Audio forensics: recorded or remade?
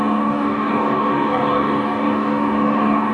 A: remade